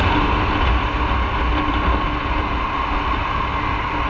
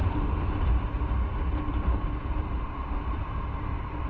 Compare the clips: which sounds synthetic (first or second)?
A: second